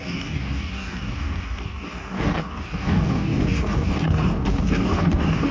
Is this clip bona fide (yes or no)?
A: no